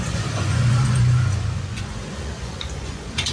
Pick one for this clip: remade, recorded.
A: remade